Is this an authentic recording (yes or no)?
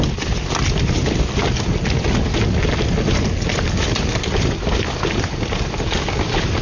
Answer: yes